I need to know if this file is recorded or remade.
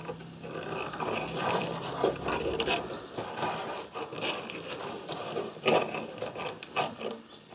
recorded